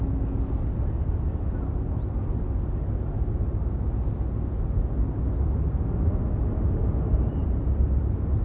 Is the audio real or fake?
real